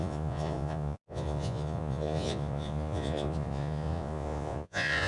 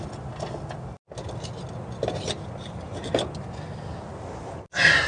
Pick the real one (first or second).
second